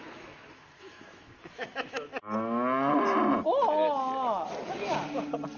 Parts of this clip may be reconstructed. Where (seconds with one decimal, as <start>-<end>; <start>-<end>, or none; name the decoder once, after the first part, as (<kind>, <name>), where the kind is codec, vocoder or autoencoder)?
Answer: 0.0-2.1 (autoencoder, DAC-VAE)